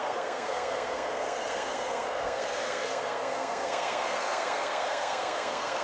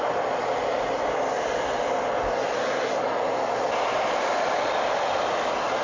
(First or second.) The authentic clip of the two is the second